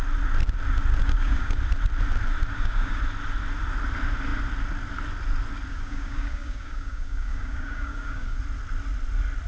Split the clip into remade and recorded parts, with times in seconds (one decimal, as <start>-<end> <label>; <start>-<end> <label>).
0.0-1.0 recorded; 1.0-1.6 remade; 1.6-2.5 recorded; 2.5-3.0 remade; 3.0-5.7 recorded; 5.7-8.4 remade; 8.4-9.5 recorded

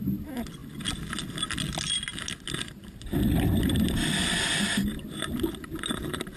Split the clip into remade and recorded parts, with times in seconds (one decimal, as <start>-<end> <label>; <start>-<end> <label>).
0.0-6.4 recorded

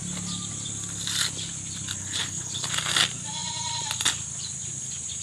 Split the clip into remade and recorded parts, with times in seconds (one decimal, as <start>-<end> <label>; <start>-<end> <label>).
0.0-2.0 recorded; 2.0-2.7 remade; 2.7-5.2 recorded

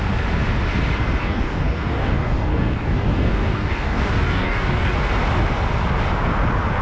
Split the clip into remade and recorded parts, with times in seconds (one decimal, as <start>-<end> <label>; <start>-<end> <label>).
0.0-1.2 recorded; 1.2-4.9 remade; 4.9-6.8 recorded

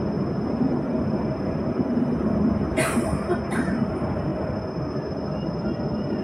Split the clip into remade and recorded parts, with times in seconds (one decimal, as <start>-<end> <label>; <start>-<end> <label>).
0.0-6.2 recorded

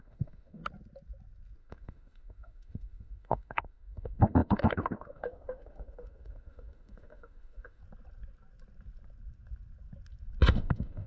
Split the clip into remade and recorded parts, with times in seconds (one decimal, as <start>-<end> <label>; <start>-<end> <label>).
0.0-0.6 remade; 0.6-1.6 recorded; 1.6-7.8 remade; 7.8-10.5 recorded; 10.5-11.1 remade

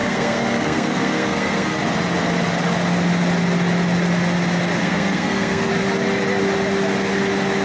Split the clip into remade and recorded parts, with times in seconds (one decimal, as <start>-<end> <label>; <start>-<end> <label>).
0.0-1.8 remade; 1.8-4.8 recorded; 4.8-5.7 remade; 5.7-7.6 recorded

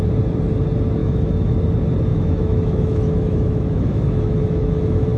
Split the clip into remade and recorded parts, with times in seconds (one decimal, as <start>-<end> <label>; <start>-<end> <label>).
0.0-1.0 recorded; 1.0-1.6 remade; 1.6-2.1 recorded; 2.1-5.2 remade